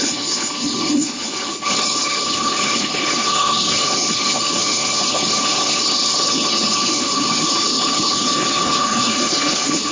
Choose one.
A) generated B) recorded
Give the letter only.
A